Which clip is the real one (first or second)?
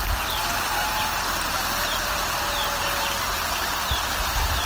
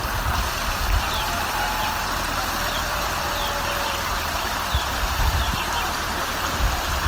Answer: first